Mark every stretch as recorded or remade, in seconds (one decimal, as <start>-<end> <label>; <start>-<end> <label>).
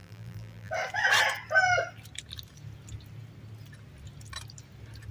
0.0-0.7 remade; 0.7-5.1 recorded